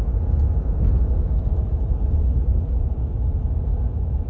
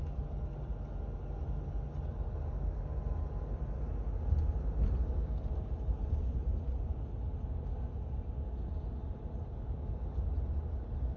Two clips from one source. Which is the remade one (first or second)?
first